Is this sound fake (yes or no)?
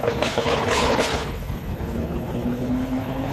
yes